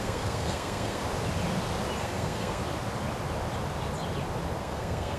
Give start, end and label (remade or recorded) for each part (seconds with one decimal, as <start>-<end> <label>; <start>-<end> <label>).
0.0-1.0 remade; 1.0-2.0 recorded; 2.0-2.6 remade; 2.6-4.6 recorded; 4.6-5.2 remade